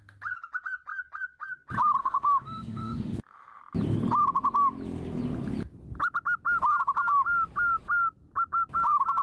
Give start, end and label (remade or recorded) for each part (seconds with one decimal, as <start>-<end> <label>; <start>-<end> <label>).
0.0-2.0 recorded; 2.0-3.6 remade; 3.6-9.2 recorded